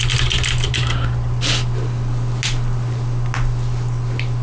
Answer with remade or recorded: recorded